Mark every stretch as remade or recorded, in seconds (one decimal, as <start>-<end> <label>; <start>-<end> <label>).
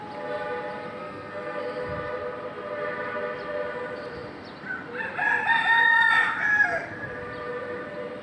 0.0-1.0 recorded; 1.0-1.6 remade; 1.6-8.2 recorded